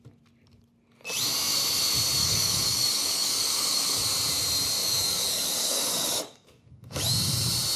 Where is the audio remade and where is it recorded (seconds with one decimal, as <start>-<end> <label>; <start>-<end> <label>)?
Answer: 0.0-2.2 recorded; 2.2-4.0 remade; 4.0-4.8 recorded; 4.8-7.0 remade; 7.0-7.8 recorded